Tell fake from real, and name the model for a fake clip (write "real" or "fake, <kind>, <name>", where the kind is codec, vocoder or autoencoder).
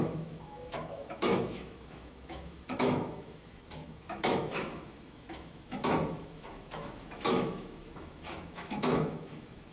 fake, autoencoder, DAC-VAE